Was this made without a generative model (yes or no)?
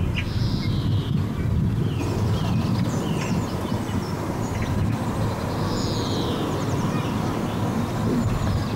yes